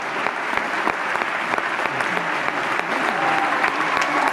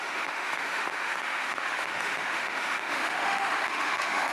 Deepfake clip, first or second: second